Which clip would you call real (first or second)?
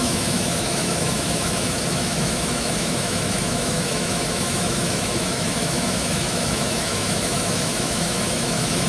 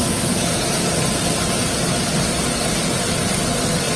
second